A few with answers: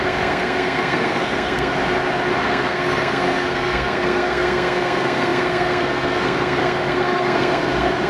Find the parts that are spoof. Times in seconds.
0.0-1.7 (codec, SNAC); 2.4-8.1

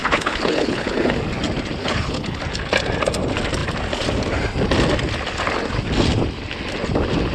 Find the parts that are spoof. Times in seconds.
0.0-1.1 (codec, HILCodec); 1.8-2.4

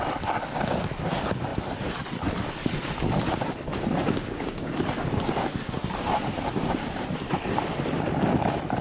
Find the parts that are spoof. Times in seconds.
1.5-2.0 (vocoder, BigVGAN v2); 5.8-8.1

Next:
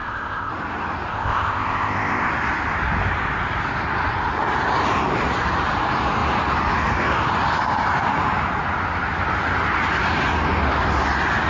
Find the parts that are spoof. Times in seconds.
0.0-0.5 (codec, ZipCodec); 1.1-2.3

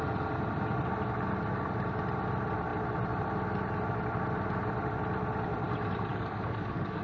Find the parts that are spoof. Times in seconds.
6.1-7.0 (codec, DAC)